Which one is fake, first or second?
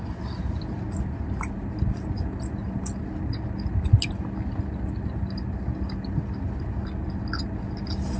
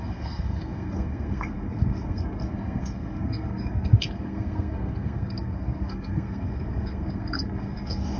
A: second